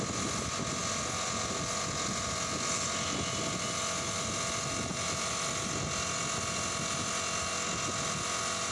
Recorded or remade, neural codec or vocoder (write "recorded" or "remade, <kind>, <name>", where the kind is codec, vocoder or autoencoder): recorded